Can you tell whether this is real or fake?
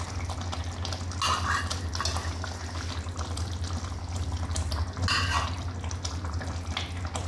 real